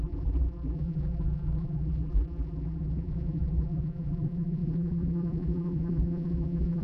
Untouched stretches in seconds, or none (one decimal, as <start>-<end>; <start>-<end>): none